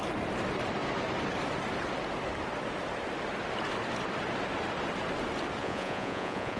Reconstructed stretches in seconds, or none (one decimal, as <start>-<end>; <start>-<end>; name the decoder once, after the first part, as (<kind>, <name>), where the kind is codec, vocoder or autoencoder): 5.6-6.6 (vocoder, Vocos)